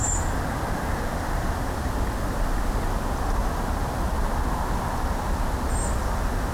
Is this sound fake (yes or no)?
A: no